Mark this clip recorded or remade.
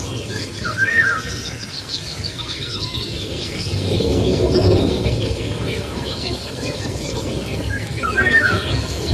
remade